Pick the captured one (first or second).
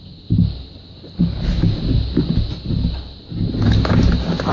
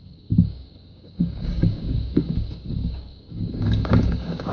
first